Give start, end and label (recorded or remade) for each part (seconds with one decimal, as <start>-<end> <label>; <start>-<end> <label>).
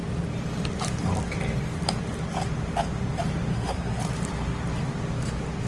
0.0-3.5 recorded; 3.5-4.0 remade; 4.0-5.7 recorded